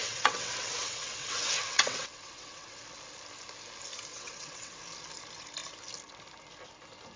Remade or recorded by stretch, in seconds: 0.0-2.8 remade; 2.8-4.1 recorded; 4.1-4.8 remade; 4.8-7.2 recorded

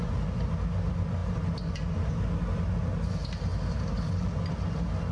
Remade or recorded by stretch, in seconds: 0.0-5.1 recorded